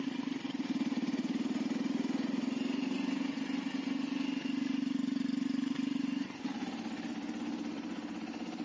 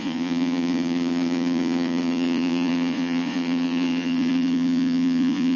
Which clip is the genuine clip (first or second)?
first